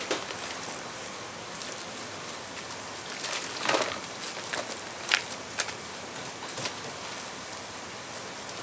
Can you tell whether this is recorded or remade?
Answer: recorded